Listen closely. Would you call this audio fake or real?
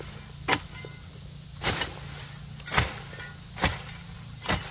real